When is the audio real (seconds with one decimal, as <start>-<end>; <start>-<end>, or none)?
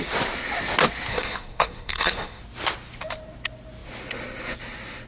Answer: 0.0-1.1; 2.4-5.1